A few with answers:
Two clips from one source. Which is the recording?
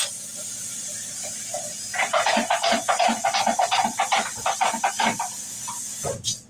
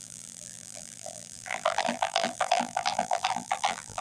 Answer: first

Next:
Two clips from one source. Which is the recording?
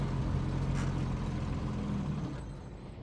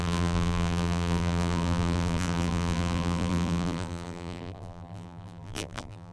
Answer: first